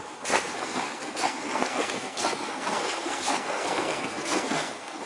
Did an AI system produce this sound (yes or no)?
yes